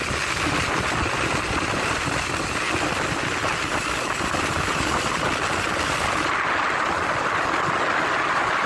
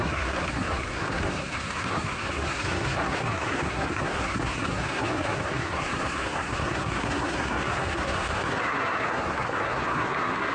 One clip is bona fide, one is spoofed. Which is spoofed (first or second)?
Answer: second